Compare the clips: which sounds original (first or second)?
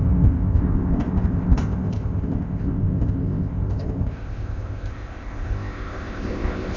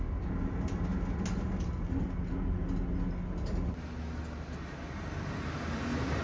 second